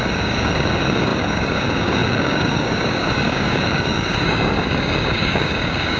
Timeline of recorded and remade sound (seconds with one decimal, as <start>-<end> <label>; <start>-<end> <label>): 0.0-6.0 remade